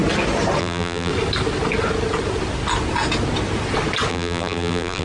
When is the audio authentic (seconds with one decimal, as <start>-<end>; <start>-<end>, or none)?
0.0-0.6; 1.1-4.1